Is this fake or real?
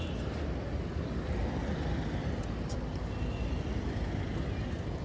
real